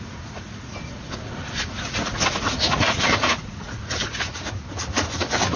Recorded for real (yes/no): no